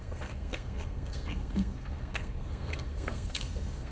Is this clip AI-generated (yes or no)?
yes